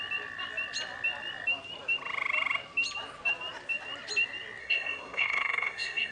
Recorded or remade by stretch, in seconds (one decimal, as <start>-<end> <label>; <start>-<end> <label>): 0.0-4.6 recorded; 4.6-6.1 remade